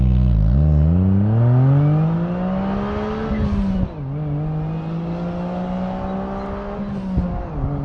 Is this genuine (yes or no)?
yes